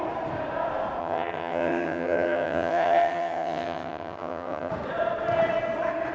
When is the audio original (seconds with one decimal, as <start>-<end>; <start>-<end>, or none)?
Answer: 0.0-1.0; 4.7-6.1